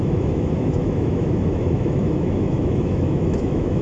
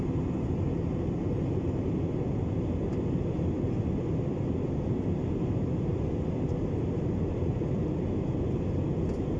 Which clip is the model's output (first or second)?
first